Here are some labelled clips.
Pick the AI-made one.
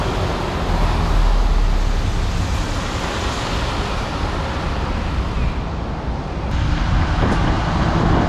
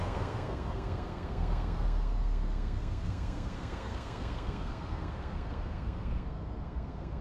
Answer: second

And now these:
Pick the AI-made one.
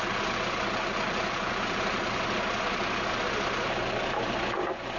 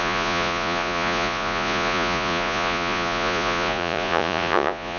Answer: second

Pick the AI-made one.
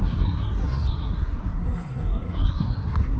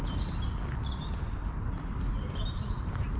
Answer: first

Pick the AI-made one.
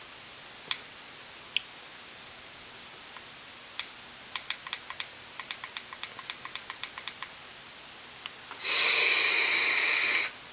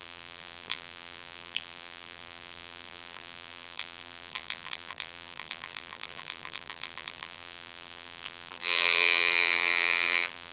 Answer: second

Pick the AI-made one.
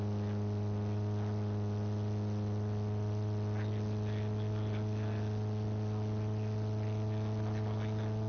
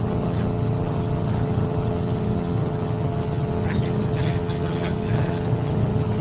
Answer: second